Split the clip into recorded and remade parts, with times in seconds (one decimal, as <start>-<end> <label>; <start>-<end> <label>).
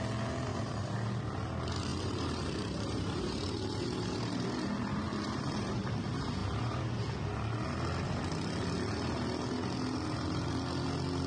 0.0-0.5 recorded; 0.5-1.2 remade; 1.2-1.9 recorded; 1.9-5.8 remade; 5.8-11.3 recorded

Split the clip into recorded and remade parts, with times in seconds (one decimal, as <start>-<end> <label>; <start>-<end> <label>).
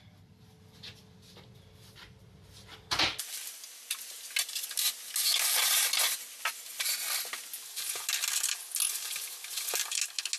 0.0-10.4 recorded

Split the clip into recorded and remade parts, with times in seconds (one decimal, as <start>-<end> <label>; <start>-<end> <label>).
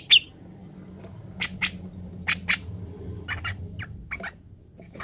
0.0-5.0 recorded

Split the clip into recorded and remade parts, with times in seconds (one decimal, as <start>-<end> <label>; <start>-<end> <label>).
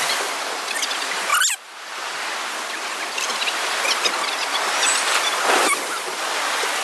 0.0-1.3 remade; 1.3-2.7 recorded; 2.7-6.8 remade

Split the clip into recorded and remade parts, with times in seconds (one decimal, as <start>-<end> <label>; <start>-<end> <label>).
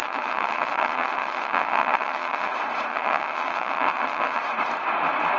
0.0-2.5 remade; 2.5-2.9 recorded; 2.9-4.4 remade; 4.4-5.4 recorded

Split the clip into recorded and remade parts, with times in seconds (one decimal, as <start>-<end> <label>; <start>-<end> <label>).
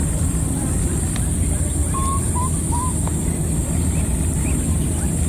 0.0-5.3 remade